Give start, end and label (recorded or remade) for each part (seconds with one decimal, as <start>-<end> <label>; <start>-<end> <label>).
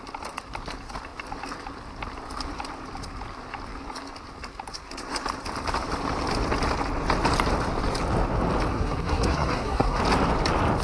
0.0-8.7 recorded; 8.7-10.0 remade; 10.0-10.8 recorded